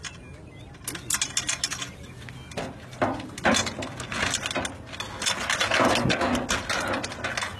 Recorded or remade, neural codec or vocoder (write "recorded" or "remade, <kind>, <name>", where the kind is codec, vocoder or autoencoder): recorded